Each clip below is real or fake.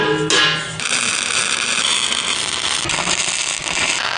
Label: real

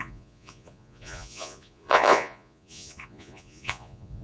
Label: fake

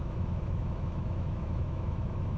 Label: fake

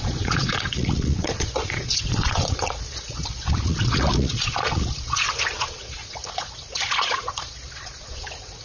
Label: fake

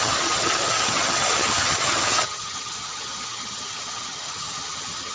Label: fake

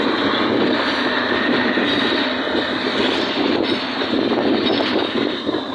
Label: real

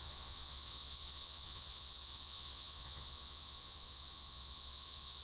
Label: fake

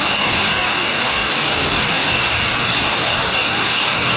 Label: fake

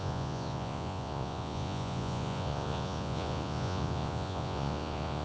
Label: fake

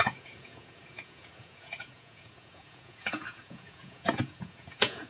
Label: fake